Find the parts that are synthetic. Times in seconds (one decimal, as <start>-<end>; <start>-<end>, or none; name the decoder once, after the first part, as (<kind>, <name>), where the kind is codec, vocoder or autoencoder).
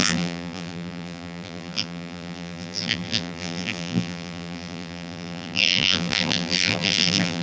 0.0-7.4 (vocoder, BigVGAN v2)